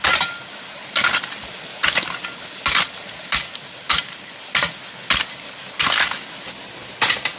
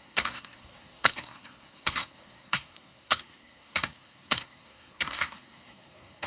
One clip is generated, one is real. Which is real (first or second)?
first